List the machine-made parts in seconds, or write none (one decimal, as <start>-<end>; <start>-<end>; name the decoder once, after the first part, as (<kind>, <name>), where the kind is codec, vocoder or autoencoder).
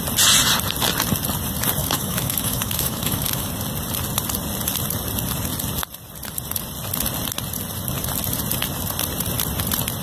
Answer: 1.8-3.5 (autoencoder, DAC-VAE)